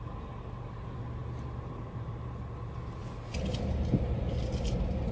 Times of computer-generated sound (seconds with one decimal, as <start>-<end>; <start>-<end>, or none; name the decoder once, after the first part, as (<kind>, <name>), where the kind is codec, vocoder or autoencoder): none